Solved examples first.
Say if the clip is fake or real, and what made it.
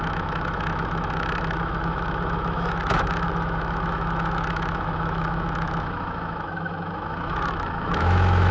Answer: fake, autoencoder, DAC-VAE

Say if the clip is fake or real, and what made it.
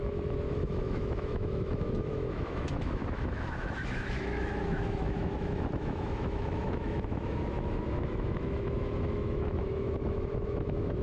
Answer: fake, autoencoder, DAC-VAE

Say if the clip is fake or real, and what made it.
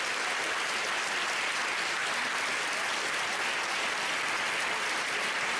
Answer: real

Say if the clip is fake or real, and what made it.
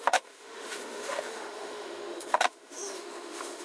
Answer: fake, autoencoder, DAC-VAE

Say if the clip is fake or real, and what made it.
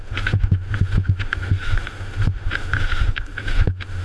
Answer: fake, autoencoder, DAC-VAE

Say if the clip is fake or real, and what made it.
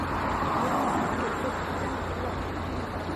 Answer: real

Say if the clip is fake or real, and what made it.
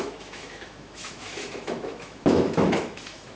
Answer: fake, autoencoder, DAC-VAE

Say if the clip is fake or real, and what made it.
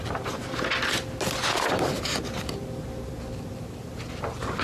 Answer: real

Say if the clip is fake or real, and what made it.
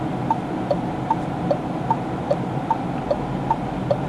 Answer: real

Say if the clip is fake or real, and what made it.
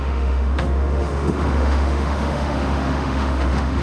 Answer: fake, autoencoder, DAC-VAE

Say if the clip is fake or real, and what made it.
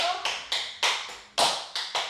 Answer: real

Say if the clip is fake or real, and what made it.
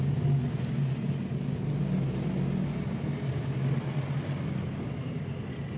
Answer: real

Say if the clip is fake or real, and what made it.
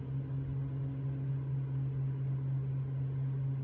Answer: real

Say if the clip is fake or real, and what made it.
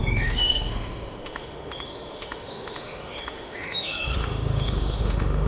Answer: fake, autoencoder, DAC-VAE